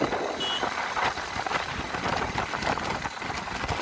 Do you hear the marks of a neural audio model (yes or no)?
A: no